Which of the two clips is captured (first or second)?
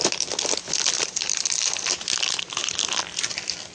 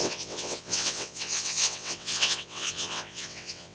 first